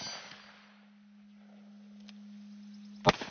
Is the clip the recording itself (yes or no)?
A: yes